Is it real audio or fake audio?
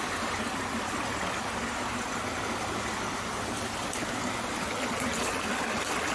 real